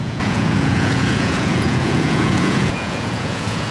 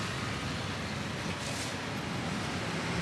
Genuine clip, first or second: second